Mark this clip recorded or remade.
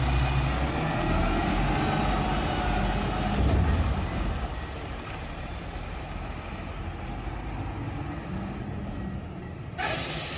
recorded